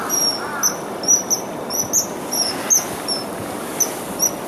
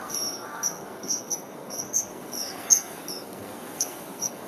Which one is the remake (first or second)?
second